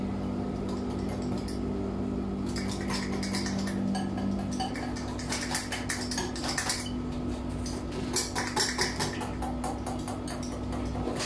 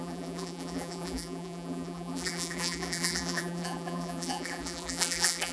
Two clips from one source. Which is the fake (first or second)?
second